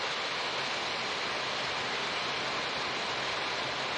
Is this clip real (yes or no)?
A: yes